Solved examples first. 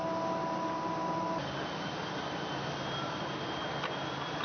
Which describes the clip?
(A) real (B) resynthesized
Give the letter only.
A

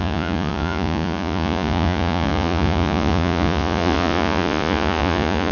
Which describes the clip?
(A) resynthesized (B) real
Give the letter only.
A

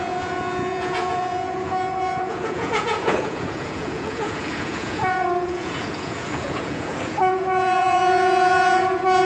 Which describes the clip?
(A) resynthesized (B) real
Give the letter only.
A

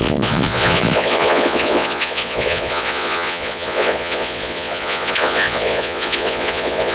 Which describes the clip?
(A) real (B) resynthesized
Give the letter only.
B